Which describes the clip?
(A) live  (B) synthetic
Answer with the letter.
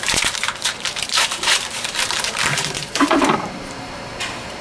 B